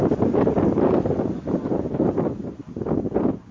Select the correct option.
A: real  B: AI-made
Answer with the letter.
A